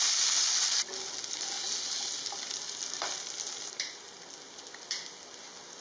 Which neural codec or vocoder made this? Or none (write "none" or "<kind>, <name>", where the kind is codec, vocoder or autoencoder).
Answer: none